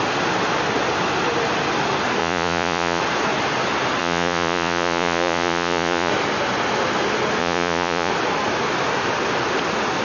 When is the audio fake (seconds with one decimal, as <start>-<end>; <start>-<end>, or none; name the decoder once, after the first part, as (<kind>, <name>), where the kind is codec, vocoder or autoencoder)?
2.2-3.0 (vocoder, Vocos); 4.0-6.1; 7.4-8.1